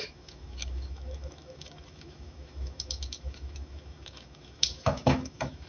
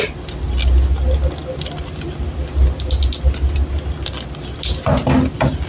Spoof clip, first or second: first